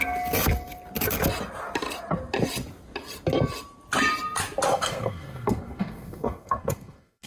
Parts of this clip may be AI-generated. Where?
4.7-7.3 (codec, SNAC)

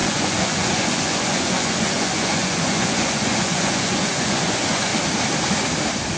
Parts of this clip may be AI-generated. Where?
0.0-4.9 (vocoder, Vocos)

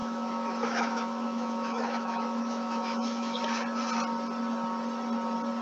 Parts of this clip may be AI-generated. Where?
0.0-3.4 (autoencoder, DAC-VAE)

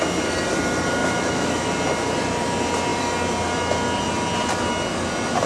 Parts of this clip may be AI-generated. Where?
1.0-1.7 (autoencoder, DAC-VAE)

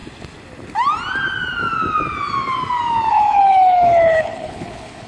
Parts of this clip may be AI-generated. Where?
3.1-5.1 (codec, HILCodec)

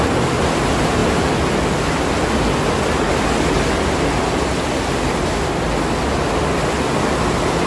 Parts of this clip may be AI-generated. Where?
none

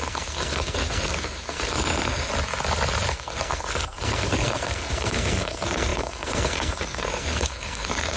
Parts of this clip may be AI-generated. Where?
0.0-2.3 (codec, SNAC); 3.1-8.2